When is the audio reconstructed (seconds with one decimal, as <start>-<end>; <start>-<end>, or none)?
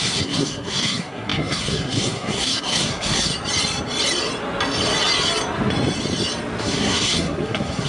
0.0-3.3; 6.6-7.9